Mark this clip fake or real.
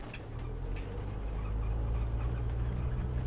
real